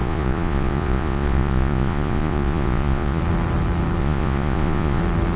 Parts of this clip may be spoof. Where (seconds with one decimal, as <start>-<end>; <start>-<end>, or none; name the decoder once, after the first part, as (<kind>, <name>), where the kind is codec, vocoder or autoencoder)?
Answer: 0.0-3.2 (vocoder, Vocos); 4.0-5.0

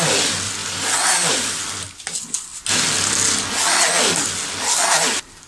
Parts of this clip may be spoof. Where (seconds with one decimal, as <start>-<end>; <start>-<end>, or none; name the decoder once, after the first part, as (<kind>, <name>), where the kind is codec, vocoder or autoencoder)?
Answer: 0.6-1.6 (vocoder, BigVGAN v2)

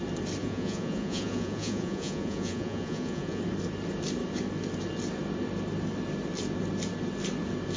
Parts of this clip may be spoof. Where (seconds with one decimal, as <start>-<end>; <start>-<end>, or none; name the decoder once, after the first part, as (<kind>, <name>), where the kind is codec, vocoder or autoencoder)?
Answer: 0.4-3.4 (vocoder, Vocos)

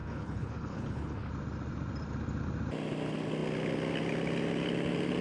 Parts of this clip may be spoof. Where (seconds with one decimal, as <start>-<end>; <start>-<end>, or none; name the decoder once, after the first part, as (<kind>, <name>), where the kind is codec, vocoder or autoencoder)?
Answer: 0.0-1.3 (codec, HILCodec)

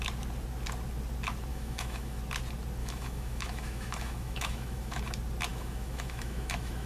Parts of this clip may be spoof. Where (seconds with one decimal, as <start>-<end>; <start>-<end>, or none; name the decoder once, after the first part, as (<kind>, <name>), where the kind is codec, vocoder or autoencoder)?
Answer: 1.5-2.2 (autoencoder, DAC-VAE); 2.8-5.0; 5.5-6.9

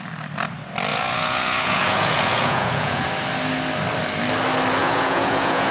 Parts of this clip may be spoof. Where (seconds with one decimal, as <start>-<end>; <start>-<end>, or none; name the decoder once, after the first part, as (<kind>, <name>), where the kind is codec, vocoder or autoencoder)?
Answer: 0.9-3.1 (vocoder, Vocos); 4.8-5.7